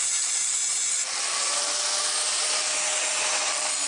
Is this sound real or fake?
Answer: real